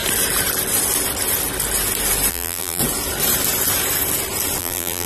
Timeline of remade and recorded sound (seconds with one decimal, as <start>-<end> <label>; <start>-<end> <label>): 0.0-2.3 recorded; 2.3-2.8 remade; 2.8-4.6 recorded; 4.6-5.1 remade